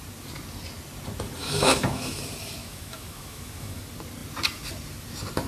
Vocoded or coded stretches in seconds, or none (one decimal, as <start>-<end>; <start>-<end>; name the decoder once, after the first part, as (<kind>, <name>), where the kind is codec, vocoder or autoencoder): 1.4-2.2 (autoencoder, DAC-VAE); 2.6-3.8